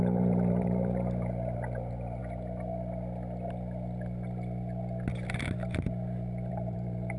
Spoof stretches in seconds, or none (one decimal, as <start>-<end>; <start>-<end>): 0.0-2.2; 6.5-7.2